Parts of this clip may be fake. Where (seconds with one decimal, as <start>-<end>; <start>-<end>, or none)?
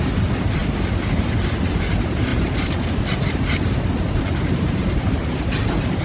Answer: 2.3-6.0